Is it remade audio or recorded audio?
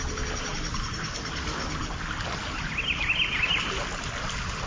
recorded